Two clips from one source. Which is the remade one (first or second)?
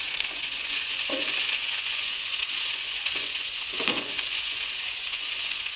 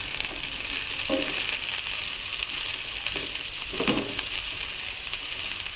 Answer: first